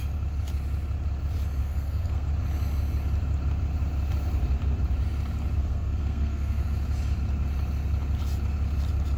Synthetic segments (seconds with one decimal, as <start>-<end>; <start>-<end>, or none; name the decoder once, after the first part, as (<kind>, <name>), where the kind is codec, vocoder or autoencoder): 1.6-2.3 (codec, SNAC); 5.6-6.6